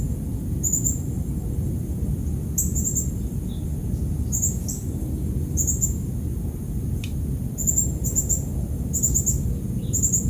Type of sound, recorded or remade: recorded